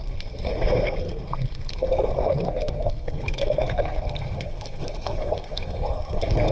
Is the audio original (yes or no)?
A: no